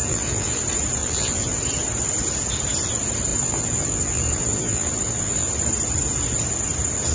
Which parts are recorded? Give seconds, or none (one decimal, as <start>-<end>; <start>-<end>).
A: 0.6-1.0; 1.6-3.3; 5.5-7.1